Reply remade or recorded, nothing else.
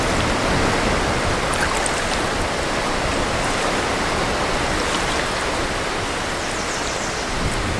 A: remade